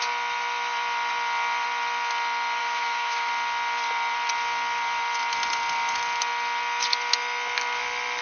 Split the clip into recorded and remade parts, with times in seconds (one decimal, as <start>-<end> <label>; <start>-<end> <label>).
0.0-2.6 recorded; 2.6-3.3 remade; 3.3-8.2 recorded